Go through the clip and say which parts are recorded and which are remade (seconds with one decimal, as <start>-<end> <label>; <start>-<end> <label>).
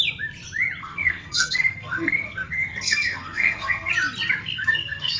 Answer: 0.0-0.8 recorded; 0.8-3.9 remade; 3.9-4.4 recorded; 4.4-5.2 remade